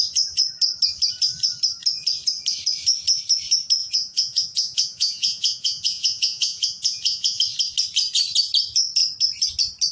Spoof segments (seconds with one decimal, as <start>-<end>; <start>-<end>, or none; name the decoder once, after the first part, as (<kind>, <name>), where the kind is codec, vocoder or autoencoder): 3.8-7.4 (vocoder, Vocos)